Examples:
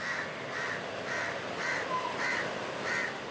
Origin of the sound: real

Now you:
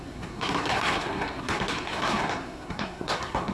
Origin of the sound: fake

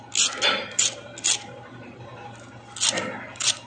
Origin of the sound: real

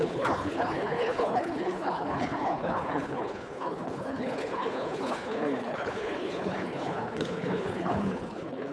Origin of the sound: fake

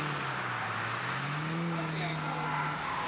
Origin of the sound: real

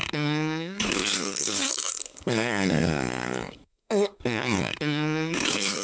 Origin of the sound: fake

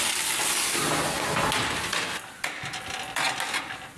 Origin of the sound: real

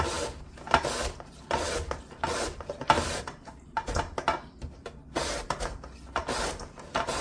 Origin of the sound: real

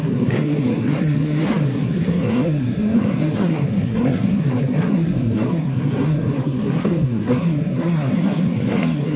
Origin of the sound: fake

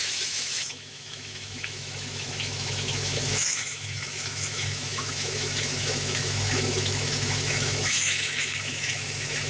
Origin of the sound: fake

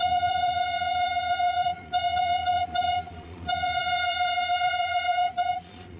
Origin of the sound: fake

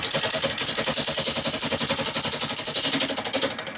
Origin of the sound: real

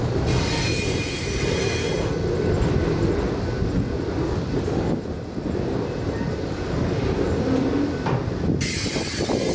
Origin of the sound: real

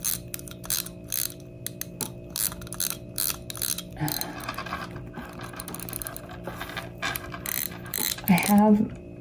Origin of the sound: real